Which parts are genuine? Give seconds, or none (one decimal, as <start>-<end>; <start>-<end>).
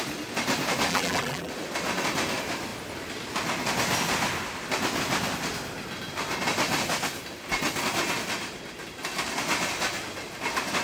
0.0-0.9; 1.5-10.8